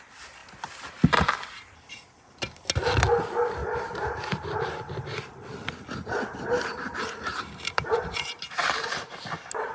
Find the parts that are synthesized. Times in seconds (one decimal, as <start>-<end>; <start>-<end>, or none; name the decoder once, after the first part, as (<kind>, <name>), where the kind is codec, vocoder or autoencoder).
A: 3.6-5.3 (vocoder, BigVGAN v2); 6.7-9.1